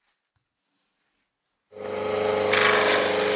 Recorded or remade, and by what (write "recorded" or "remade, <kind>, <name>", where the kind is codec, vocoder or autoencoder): recorded